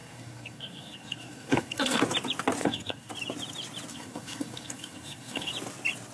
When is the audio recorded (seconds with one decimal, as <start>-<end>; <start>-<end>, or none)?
2.0-2.6; 3.1-3.9; 5.5-6.1